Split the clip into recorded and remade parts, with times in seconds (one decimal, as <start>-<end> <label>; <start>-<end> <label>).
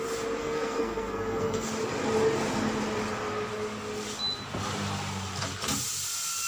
0.0-0.4 recorded; 0.4-1.7 remade; 1.7-6.5 recorded